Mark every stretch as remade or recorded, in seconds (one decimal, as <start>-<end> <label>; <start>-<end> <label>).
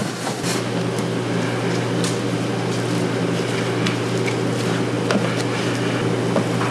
0.0-6.7 recorded